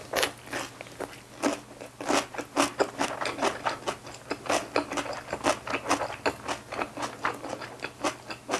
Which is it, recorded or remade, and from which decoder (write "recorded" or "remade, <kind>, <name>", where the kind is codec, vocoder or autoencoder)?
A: recorded